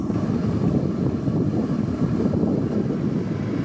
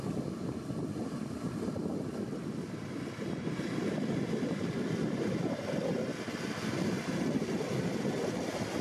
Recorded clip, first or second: first